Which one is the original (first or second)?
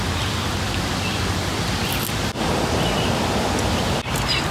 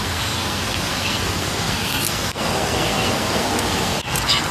first